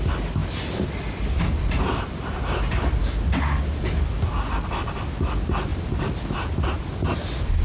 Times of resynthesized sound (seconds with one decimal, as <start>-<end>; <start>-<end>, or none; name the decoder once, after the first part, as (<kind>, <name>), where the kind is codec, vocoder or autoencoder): none